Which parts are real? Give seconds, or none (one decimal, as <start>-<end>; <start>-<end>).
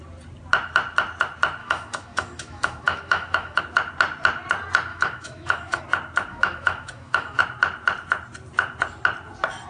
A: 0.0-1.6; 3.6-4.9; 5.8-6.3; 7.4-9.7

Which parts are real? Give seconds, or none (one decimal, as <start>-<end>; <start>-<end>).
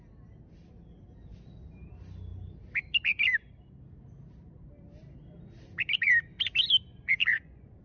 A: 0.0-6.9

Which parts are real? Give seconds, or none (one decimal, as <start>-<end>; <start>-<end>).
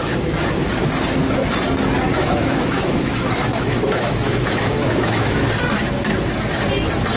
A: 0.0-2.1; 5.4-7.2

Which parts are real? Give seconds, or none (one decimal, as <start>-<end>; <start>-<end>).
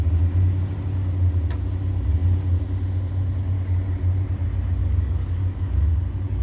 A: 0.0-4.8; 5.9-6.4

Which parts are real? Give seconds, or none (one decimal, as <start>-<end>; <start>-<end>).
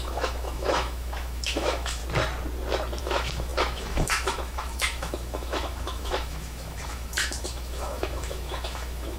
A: 2.0-3.0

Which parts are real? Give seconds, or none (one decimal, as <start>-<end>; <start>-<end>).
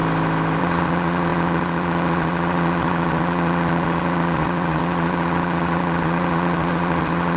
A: 0.0-0.6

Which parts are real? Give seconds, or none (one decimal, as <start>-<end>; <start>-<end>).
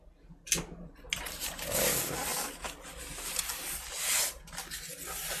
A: 0.0-5.4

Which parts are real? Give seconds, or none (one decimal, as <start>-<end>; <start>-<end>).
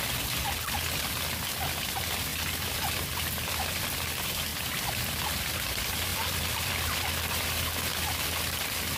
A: 0.0-2.3; 3.6-4.5; 5.5-6.1; 6.7-9.0